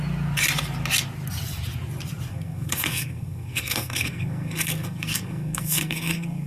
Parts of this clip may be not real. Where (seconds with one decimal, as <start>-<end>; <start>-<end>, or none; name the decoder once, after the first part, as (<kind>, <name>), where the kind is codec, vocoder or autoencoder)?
2.3-6.5 (codec, SNAC)